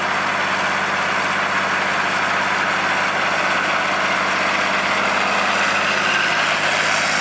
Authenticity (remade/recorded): recorded